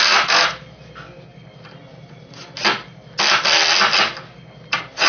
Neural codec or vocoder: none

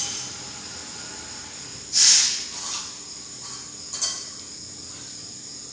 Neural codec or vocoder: none